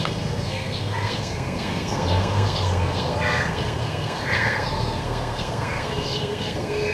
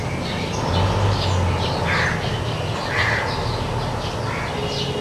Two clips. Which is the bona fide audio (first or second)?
second